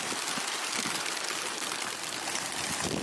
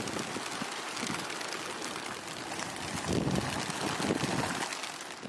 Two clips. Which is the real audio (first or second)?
second